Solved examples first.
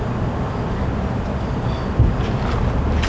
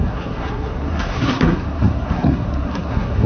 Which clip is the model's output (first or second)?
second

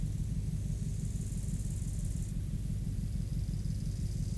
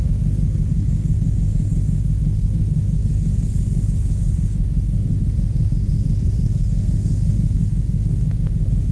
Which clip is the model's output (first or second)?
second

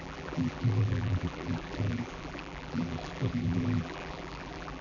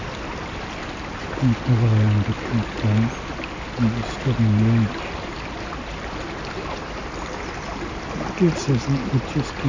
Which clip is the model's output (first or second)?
first